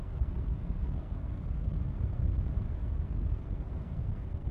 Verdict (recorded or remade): remade